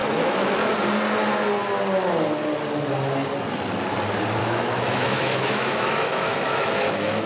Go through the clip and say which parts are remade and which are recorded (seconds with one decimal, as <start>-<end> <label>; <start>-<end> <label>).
0.0-0.7 remade; 0.7-4.4 recorded; 4.4-7.3 remade